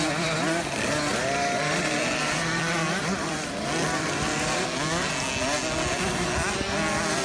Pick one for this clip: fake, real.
real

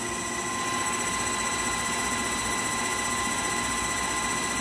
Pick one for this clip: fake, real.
real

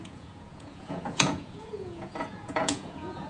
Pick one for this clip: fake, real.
fake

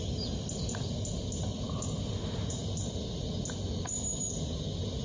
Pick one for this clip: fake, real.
real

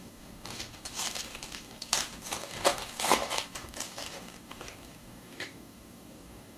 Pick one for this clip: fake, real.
fake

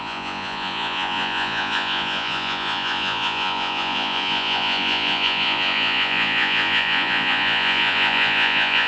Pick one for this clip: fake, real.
fake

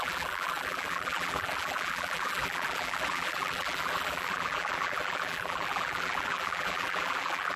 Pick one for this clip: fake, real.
fake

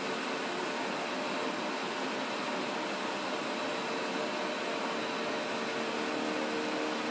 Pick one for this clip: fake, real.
real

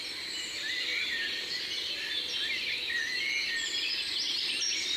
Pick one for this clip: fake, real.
real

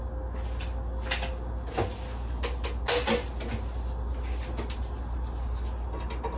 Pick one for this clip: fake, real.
real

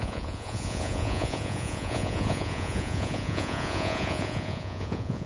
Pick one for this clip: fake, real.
fake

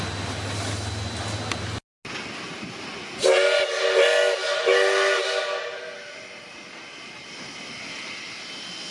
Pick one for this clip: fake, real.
real